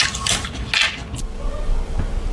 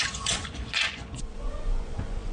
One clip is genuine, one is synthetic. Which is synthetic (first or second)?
second